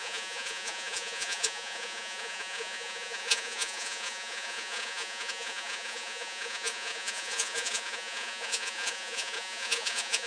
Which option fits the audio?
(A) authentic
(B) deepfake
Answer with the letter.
B